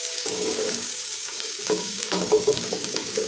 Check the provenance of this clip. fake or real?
fake